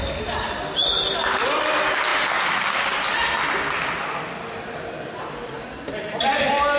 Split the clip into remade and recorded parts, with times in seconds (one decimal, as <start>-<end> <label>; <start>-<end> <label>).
0.0-6.8 recorded